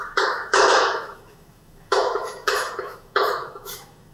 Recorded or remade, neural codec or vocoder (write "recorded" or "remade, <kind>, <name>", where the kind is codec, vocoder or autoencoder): remade, autoencoder, DAC-VAE